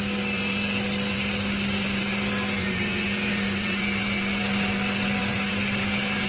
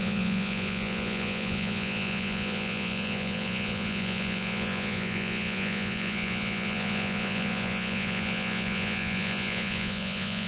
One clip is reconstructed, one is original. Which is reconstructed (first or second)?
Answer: second